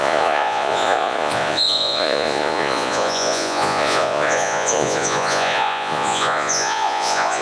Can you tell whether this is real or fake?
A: fake